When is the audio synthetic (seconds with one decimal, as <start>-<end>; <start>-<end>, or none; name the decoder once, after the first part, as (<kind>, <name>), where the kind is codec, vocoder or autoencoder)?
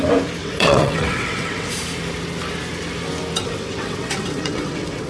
0.4-1.7 (vocoder, WaveNeXt); 3.4-5.1